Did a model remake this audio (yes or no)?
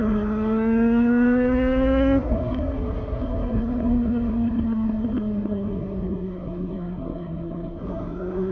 yes